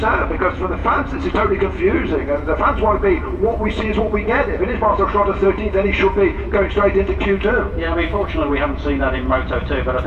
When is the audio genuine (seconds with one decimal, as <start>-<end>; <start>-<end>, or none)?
0.8-1.3